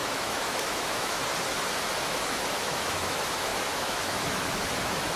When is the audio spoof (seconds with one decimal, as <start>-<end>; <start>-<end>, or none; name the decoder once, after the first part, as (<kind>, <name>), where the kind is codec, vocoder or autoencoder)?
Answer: 0.0-1.2 (autoencoder, DAC-VAE); 2.0-5.2